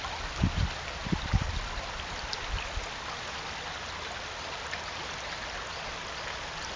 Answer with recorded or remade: recorded